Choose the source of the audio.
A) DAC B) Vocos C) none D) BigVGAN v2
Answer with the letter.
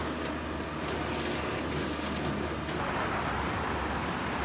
C